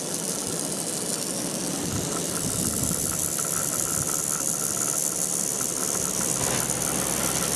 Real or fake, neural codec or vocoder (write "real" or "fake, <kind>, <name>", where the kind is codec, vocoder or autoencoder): real